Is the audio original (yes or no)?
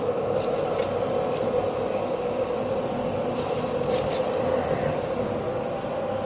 yes